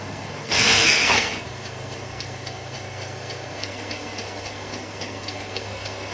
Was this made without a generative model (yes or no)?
no